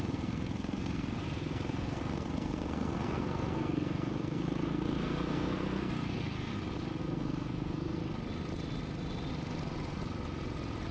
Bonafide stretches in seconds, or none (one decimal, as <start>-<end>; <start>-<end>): 6.5-7.0; 8.0-10.9